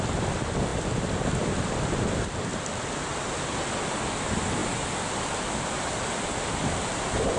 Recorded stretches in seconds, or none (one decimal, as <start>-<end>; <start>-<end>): 0.0-0.7; 2.8-4.6